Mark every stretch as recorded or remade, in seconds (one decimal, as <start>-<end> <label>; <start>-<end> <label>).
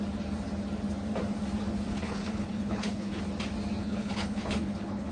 0.0-1.9 recorded; 1.9-3.2 remade; 3.2-3.8 recorded; 3.8-5.1 remade